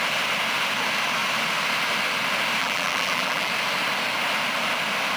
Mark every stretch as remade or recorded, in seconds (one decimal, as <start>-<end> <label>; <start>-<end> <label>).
0.0-2.6 recorded; 2.6-3.5 remade; 3.5-5.2 recorded